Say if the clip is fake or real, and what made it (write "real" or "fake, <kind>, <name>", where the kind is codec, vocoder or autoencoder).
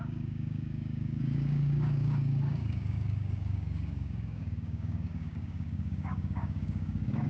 fake, codec, DAC